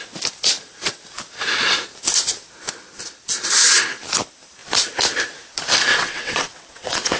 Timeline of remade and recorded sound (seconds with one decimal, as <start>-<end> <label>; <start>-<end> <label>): 0.0-5.9 recorded; 5.9-7.2 remade